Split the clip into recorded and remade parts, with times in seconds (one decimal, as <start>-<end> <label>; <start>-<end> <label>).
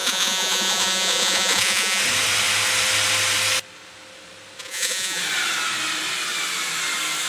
0.0-2.0 remade; 2.0-4.6 recorded; 4.6-5.2 remade; 5.2-7.3 recorded